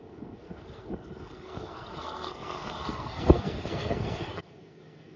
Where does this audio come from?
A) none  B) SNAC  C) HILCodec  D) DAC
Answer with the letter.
B